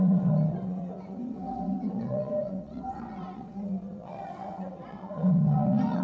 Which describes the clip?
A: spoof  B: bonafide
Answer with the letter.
A